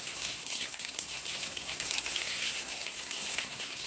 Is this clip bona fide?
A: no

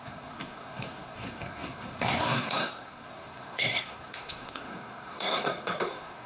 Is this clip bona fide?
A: no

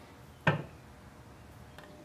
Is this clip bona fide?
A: yes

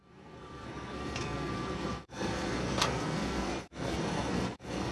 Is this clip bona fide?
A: no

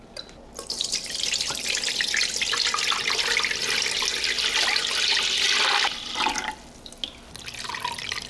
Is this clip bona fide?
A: yes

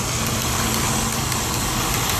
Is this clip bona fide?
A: yes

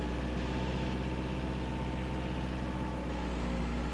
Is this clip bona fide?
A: yes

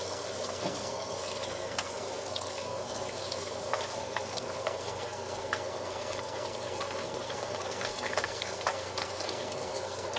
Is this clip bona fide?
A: no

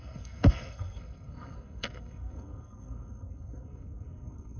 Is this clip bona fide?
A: no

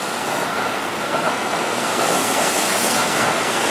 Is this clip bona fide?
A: no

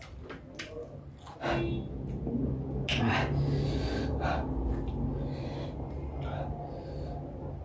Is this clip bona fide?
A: yes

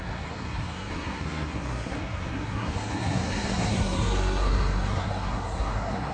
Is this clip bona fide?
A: no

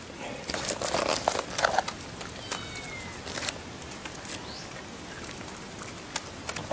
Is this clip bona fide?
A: yes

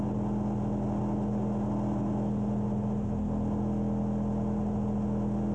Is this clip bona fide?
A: yes